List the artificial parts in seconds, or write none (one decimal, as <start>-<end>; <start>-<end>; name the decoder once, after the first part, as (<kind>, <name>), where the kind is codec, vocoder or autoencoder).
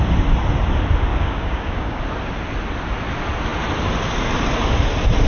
1.1-2.0 (codec, DAC)